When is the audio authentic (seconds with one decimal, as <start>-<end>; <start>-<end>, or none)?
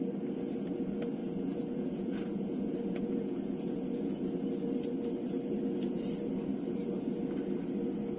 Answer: 0.0-1.2; 4.3-8.2